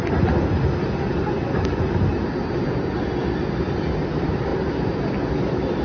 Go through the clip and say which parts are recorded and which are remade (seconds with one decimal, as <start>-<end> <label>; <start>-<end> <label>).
0.0-5.8 recorded